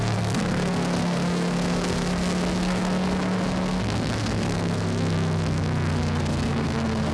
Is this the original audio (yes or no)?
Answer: no